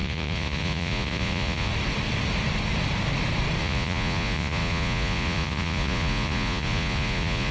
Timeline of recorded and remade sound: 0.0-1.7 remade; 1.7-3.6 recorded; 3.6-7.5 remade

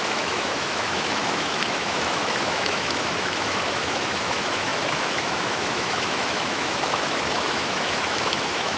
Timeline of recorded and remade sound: 0.0-8.8 remade

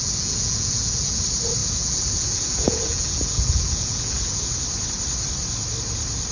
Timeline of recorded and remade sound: 0.0-1.2 remade; 1.2-1.6 recorded; 1.6-4.5 remade; 4.5-6.3 recorded

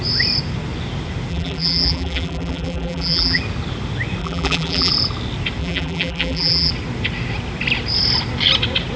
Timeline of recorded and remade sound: 0.0-1.3 recorded; 1.3-3.4 remade; 3.4-4.2 recorded; 4.2-4.9 remade; 4.9-5.6 recorded; 5.6-6.7 remade; 6.7-9.0 recorded

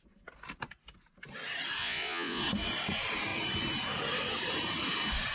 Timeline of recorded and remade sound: 0.0-1.8 recorded; 1.8-2.4 remade; 2.4-5.3 recorded

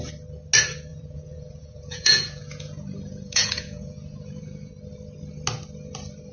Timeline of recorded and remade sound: 0.0-0.9 recorded; 0.9-4.7 remade; 4.7-6.3 recorded

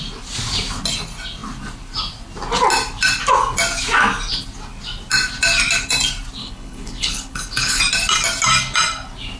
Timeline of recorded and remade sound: 0.0-6.4 recorded; 6.4-7.8 remade; 7.8-9.4 recorded